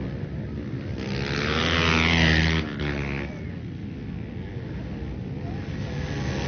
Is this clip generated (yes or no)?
no